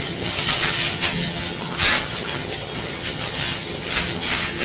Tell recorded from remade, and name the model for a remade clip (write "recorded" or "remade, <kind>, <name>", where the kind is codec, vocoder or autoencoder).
remade, vocoder, HiFi-GAN